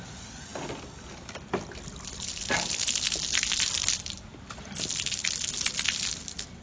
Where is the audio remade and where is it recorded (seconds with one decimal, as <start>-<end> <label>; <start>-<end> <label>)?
0.0-6.6 recorded